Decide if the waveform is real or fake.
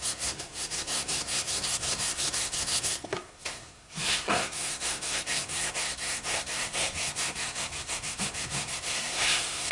fake